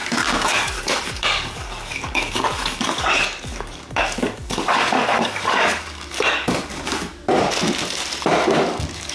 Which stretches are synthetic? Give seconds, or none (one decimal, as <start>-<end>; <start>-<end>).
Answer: 0.0-7.1; 8.7-9.1